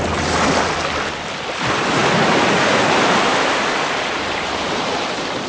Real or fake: real